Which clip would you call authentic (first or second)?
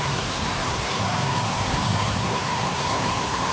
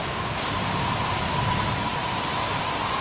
second